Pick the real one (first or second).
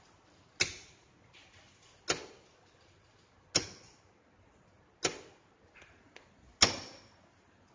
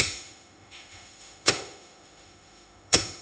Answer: first